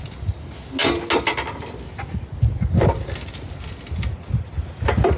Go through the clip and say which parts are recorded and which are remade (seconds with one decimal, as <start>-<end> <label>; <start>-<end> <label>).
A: 0.0-5.2 recorded

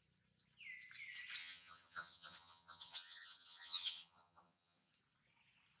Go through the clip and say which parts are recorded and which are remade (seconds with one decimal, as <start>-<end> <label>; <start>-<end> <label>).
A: 0.0-1.4 recorded; 1.4-4.9 remade; 4.9-5.8 recorded